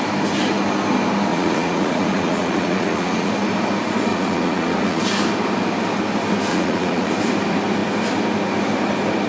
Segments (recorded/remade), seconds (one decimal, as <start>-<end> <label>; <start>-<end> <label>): 0.0-1.3 recorded; 1.3-3.3 remade; 3.3-4.1 recorded; 4.1-5.0 remade; 5.0-6.5 recorded; 6.5-7.1 remade; 7.1-9.3 recorded